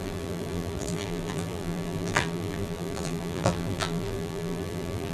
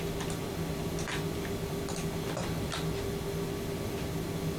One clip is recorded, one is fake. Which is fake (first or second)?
first